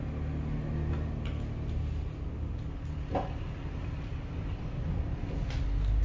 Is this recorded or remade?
recorded